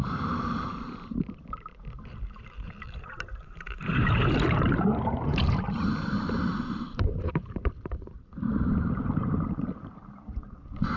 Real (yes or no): no